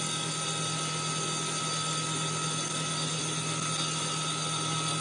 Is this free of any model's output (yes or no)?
yes